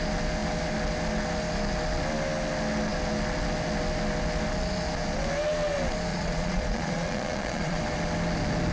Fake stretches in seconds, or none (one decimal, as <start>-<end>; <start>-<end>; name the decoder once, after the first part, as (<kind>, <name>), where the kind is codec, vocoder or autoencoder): 6.1-7.8 (vocoder, Vocos)